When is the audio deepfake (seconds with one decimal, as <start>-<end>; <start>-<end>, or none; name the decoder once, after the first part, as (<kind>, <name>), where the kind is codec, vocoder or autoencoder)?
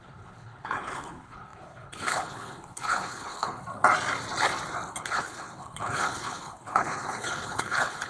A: 0.0-3.6 (codec, HILCodec); 5.0-8.1